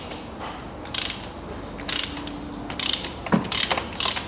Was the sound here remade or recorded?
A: recorded